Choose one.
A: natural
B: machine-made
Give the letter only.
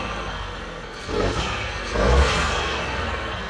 B